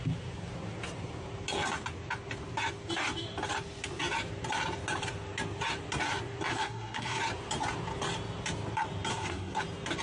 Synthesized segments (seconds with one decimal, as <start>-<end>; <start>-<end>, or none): 6.5-7.2; 9.1-9.6